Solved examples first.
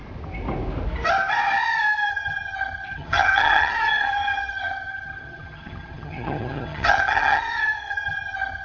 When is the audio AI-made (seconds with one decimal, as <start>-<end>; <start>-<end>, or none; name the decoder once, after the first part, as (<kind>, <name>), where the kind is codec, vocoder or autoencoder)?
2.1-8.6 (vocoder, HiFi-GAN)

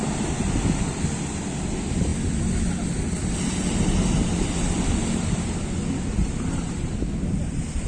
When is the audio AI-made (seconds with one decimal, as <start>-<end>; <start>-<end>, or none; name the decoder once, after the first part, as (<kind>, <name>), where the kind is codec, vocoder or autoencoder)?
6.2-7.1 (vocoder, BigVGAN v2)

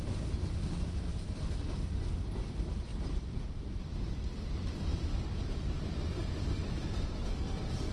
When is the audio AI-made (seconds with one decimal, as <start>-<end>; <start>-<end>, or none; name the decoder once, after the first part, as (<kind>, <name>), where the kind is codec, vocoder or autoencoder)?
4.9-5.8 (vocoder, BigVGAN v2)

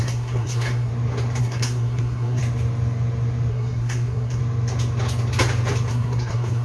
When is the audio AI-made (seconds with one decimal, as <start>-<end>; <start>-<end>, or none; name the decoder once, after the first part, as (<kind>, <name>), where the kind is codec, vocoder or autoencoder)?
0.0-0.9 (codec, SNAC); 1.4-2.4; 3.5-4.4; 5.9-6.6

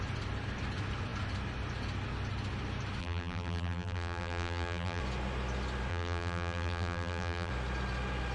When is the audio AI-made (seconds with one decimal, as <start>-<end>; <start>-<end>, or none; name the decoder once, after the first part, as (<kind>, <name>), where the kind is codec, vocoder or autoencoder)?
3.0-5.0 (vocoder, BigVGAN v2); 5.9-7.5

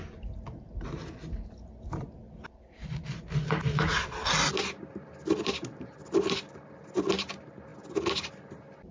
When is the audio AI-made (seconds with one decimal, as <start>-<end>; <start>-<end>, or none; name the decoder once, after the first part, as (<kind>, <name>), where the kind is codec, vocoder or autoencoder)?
none